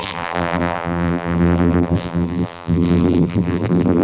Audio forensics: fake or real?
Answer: fake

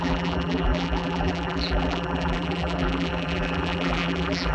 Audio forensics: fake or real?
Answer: fake